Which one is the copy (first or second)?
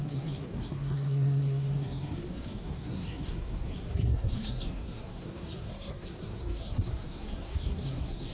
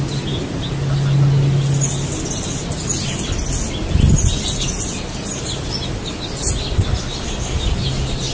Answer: first